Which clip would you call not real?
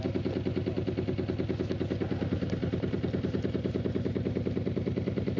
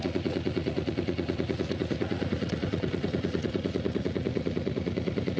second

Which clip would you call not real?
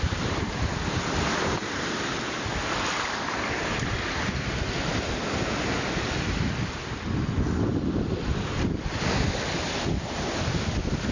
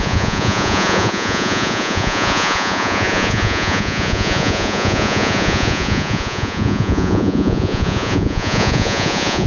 second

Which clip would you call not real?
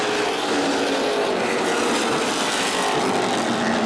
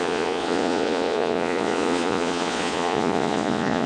second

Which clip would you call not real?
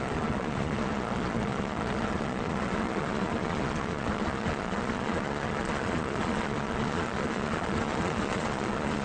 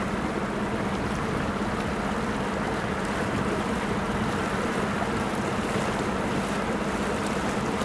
first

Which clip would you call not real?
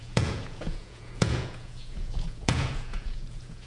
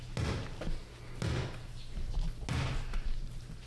first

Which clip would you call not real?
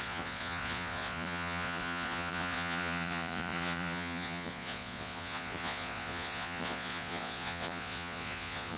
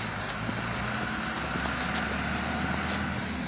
first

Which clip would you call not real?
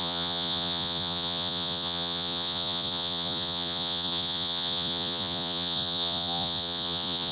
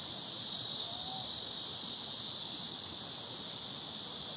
first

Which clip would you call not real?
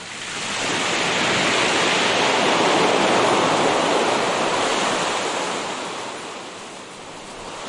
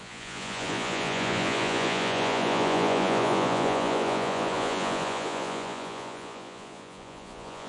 second